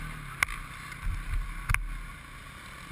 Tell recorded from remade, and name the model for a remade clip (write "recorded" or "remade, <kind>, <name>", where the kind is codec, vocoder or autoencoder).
recorded